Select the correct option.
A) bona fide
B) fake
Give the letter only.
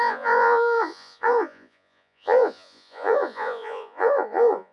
B